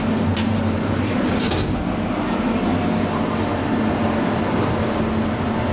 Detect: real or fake real